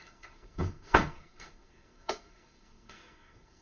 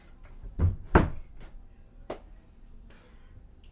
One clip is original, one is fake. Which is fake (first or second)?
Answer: first